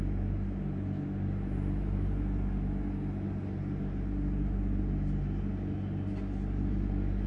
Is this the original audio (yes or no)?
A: yes